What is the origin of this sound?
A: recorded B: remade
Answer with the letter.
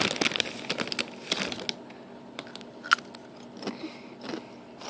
A